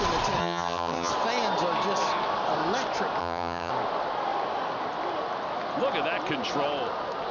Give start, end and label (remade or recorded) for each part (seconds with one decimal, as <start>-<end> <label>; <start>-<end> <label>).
0.0-0.4 recorded; 0.4-1.1 remade; 1.1-3.2 recorded; 3.2-3.7 remade; 3.7-7.3 recorded